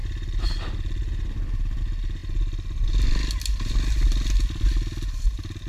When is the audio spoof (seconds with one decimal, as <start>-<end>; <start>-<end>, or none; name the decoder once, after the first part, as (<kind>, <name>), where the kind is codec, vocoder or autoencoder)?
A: 0.0-1.8 (vocoder, BigVGAN v2)